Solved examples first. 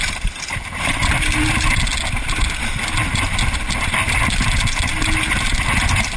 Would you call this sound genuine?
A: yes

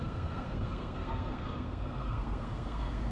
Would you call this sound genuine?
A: no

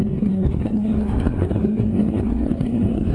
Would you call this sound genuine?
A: no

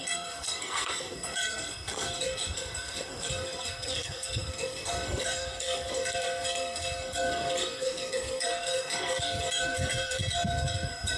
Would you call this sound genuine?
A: no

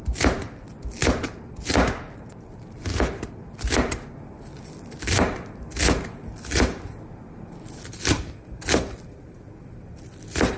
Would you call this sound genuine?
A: yes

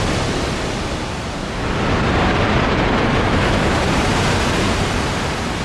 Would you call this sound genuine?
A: yes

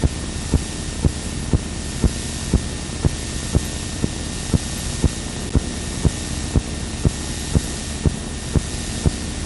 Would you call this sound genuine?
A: yes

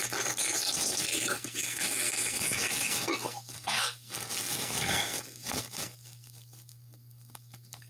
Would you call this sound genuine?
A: no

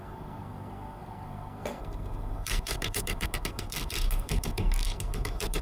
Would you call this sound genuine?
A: no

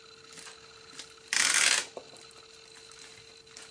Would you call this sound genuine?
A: yes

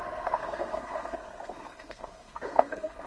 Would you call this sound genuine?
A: no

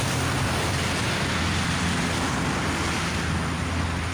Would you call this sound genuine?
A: yes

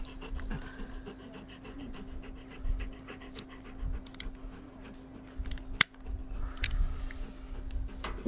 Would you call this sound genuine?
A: yes